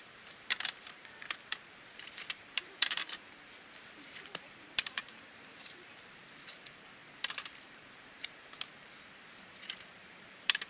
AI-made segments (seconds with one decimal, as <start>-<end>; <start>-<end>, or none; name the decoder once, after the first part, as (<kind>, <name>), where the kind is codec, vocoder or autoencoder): 0.0-10.7 (vocoder, BigVGAN v2)